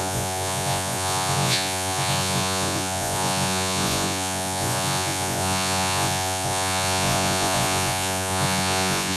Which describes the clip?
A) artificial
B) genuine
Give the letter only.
A